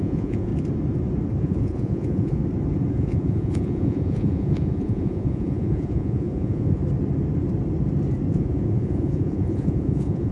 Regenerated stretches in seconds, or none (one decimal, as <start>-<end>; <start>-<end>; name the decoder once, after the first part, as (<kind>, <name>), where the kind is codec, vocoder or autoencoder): 0.0-0.5 (vocoder, Vocos); 1.4-2.4; 2.9-6.8; 8.3-10.3